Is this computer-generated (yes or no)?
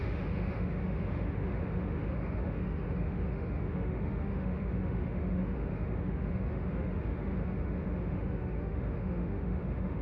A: yes